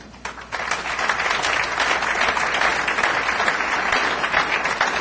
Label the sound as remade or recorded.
recorded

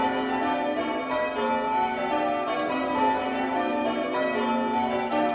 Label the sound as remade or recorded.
recorded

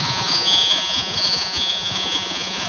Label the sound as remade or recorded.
remade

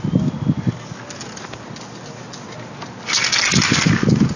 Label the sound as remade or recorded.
recorded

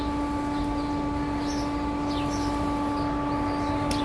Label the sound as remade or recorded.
recorded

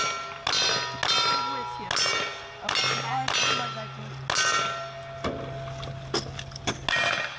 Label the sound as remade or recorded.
recorded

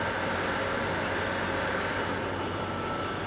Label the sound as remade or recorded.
recorded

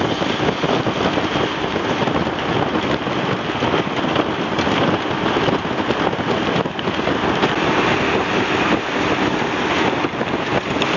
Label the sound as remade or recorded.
recorded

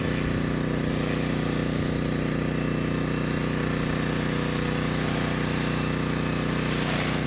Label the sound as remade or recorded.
recorded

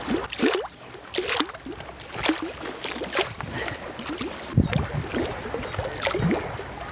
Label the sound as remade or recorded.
recorded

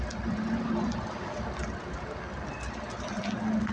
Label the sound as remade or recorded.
recorded